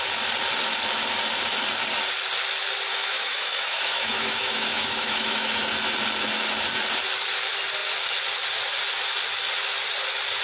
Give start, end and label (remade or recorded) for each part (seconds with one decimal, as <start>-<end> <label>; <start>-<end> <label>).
0.0-2.9 recorded; 2.9-5.7 remade; 5.7-10.4 recorded